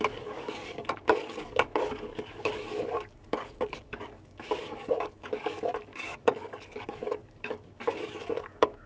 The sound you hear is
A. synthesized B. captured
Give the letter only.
A